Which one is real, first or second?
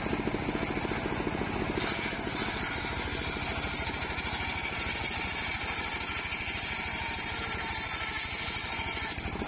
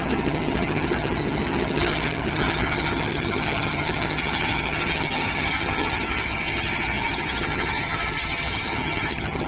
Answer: first